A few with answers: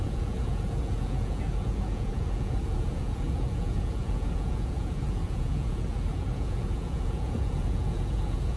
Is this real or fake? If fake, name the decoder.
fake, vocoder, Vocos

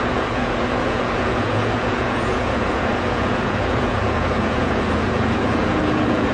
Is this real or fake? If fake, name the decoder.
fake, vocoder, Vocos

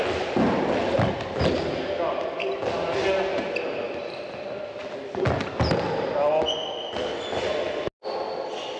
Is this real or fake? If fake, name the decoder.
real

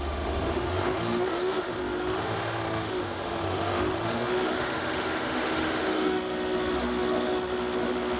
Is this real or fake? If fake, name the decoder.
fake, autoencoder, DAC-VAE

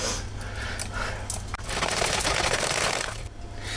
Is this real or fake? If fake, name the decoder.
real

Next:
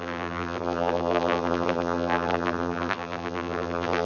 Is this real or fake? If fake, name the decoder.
fake, vocoder, BigVGAN v2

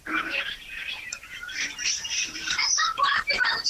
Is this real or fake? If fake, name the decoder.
fake, vocoder, BigVGAN v2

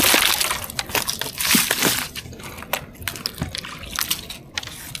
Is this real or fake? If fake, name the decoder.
real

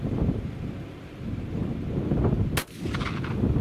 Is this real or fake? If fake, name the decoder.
real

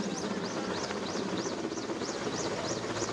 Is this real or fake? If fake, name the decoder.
fake, vocoder, BigVGAN v2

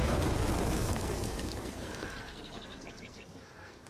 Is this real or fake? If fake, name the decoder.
fake, codec, SNAC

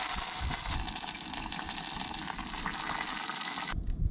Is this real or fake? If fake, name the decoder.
real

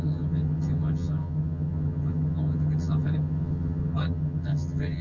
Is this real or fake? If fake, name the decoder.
fake, vocoder, HiFi-GAN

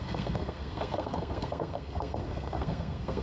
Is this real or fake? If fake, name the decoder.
fake, codec, SNAC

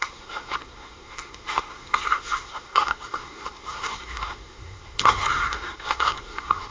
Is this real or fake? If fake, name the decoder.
fake, codec, SNAC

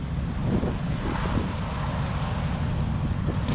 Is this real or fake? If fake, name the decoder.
fake, vocoder, BigVGAN v2